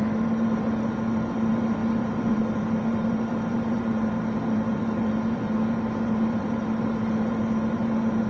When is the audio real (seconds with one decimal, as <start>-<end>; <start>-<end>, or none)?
none